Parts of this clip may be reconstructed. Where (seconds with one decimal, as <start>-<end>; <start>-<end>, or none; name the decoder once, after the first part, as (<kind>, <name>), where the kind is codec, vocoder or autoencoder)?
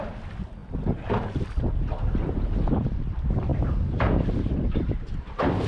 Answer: none